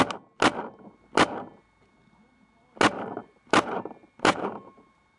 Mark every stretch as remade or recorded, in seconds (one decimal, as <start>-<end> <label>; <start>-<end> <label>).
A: 0.0-3.2 recorded; 3.2-5.2 remade